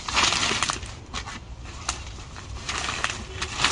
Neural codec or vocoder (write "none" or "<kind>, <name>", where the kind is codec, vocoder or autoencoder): none